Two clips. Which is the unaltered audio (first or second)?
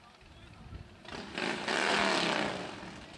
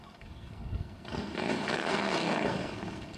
first